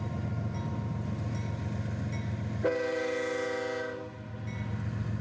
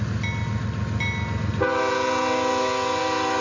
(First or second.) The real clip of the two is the second